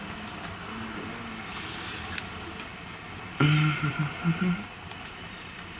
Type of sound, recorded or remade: recorded